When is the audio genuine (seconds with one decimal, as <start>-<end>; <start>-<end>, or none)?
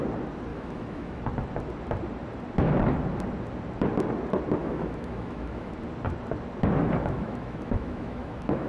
0.0-0.5; 1.2-4.6; 5.7-7.0